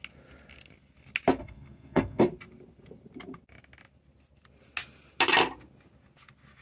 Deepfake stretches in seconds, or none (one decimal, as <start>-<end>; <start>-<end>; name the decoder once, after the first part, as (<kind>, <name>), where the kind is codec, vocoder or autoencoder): 1.4-2.2 (codec, SNAC)